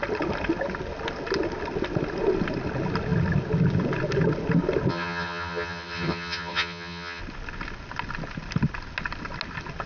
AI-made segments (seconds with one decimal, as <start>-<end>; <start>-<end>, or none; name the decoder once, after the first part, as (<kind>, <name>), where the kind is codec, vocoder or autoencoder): 4.9-7.2 (vocoder, HiFi-GAN)